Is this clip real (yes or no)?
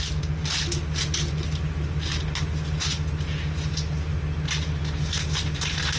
yes